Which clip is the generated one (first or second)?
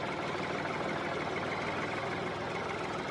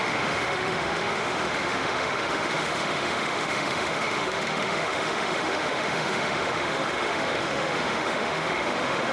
second